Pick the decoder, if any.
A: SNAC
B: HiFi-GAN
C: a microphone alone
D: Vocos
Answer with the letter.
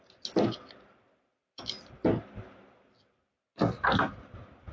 C